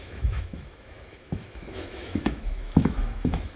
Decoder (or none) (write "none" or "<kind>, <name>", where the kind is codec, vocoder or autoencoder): autoencoder, DAC-VAE